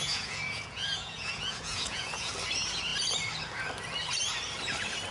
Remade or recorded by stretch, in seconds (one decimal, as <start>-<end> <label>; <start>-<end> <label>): 0.0-2.3 remade; 2.3-5.1 recorded